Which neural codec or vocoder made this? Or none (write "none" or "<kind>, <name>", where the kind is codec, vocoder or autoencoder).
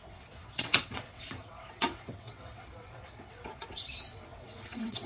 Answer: vocoder, WaveNeXt